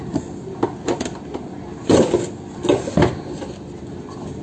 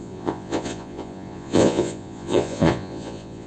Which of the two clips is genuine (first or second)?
first